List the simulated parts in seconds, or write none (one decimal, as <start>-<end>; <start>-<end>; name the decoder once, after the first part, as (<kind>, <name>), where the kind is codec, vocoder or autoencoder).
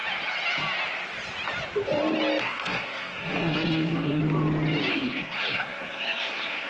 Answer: 2.4-4.2 (codec, SNAC); 4.9-6.7